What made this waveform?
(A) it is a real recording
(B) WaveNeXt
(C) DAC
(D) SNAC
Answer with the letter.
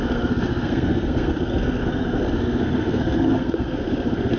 D